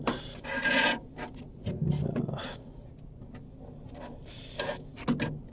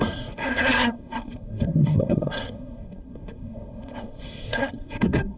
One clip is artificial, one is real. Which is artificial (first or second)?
second